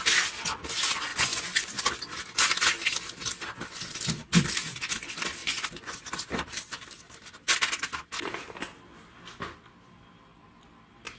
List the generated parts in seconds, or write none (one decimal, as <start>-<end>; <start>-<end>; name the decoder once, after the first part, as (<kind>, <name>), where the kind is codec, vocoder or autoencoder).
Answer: 1.1-2.0 (vocoder, Vocos); 5.4-6.1